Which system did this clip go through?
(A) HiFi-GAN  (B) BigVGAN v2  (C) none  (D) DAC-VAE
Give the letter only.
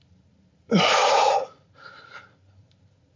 B